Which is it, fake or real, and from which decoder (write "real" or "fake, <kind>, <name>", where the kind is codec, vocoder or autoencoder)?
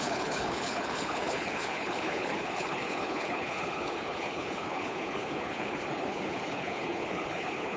fake, codec, HILCodec